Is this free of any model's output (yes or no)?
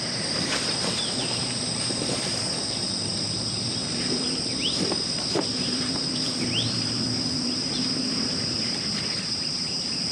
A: no